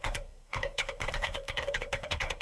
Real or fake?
fake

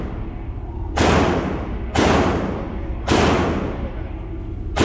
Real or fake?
real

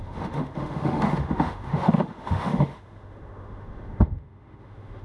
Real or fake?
fake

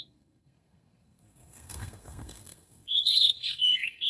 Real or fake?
fake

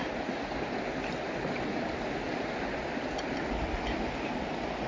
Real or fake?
real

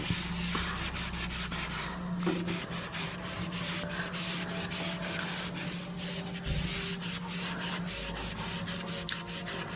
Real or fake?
real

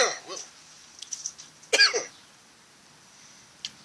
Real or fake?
real